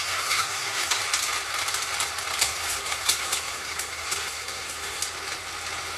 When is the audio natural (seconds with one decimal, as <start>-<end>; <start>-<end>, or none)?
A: 1.0-2.4; 5.0-6.0